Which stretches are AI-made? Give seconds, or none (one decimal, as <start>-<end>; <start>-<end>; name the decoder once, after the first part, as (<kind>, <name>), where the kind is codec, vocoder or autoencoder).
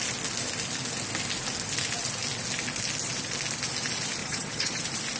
4.2-4.8 (vocoder, HiFi-GAN)